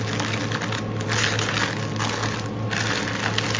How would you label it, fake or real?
real